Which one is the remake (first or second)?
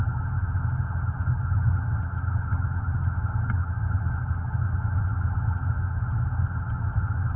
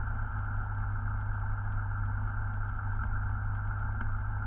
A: first